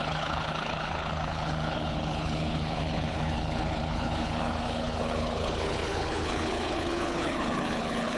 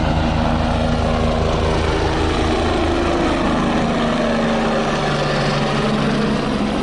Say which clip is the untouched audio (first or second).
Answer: second